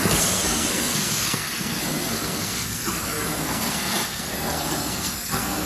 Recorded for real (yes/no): no